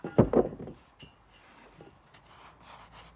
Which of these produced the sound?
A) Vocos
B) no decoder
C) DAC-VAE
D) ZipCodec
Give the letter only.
B